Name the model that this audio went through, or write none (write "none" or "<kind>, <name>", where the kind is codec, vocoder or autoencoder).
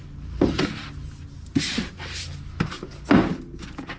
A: none